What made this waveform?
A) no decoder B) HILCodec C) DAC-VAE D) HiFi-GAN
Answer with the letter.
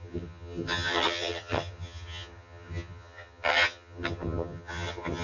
D